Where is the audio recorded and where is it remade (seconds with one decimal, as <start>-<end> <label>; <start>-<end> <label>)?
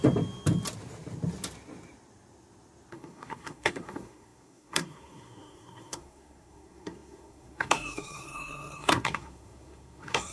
0.0-2.9 recorded; 2.9-10.3 remade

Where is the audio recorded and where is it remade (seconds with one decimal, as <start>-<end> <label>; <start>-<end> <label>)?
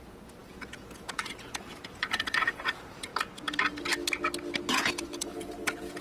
0.0-3.1 remade; 3.1-4.7 recorded; 4.7-6.0 remade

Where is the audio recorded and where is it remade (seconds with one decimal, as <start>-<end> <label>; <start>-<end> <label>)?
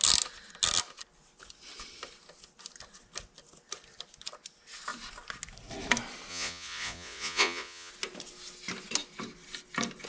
0.0-6.3 recorded; 6.3-7.9 remade; 7.9-10.1 recorded